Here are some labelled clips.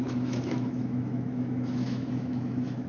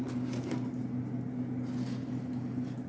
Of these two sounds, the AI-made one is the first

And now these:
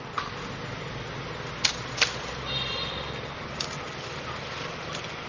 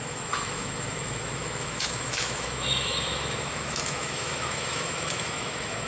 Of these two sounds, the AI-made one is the second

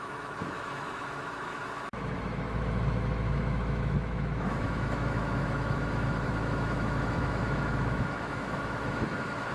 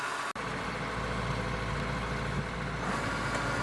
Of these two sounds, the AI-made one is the first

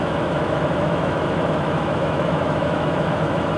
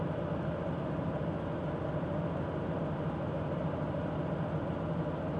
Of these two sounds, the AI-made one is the first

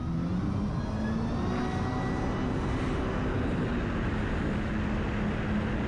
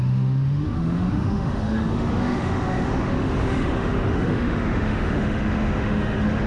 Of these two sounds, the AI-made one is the second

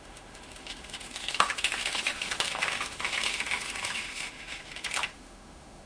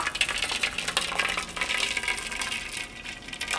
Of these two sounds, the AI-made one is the first